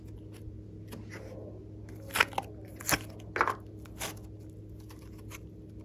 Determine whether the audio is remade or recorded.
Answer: recorded